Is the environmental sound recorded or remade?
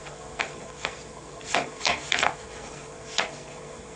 remade